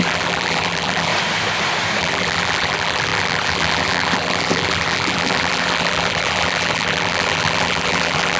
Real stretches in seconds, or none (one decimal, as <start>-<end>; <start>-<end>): 1.1-2.0

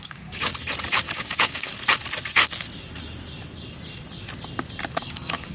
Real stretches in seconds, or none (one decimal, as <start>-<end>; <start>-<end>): 0.5-1.1; 1.7-5.0

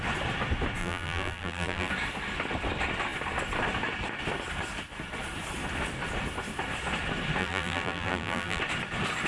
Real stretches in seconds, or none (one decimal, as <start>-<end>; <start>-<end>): 0.0-0.8; 1.9-7.4; 8.6-9.3

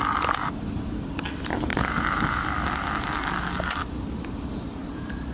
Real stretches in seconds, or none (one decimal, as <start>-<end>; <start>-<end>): 0.0-5.3